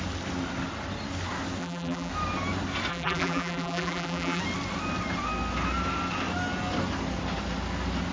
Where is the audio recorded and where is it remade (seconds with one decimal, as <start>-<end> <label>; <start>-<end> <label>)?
0.0-1.6 recorded; 1.6-2.1 remade; 2.1-2.9 recorded; 2.9-4.4 remade; 4.4-8.1 recorded